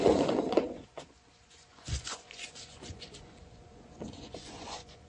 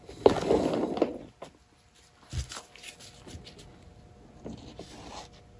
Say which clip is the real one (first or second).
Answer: second